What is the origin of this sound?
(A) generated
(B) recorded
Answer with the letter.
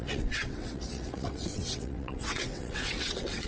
A